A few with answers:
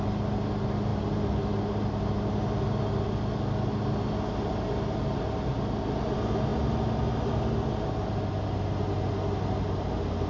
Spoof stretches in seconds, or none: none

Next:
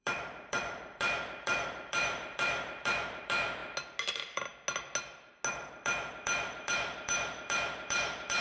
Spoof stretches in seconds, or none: 0.0-3.6 (vocoder, BigVGAN v2); 4.1-4.5; 5.5-8.4

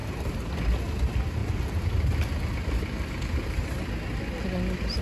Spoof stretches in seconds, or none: none

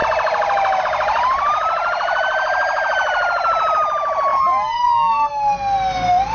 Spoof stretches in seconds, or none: none

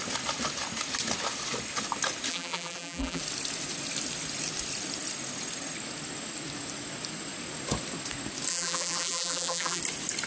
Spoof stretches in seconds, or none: 2.3-3.2 (vocoder, BigVGAN v2); 8.5-9.8